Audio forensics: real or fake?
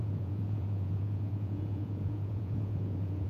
fake